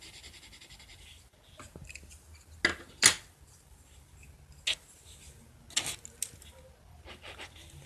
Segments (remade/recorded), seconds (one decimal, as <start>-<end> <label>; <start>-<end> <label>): 0.0-7.9 recorded